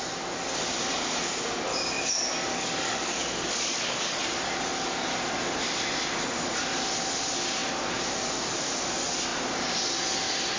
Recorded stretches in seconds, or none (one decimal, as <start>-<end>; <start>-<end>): 0.0-2.5; 4.2-10.6